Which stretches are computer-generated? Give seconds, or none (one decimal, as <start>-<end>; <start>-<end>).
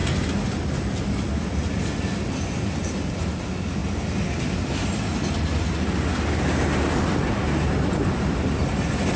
none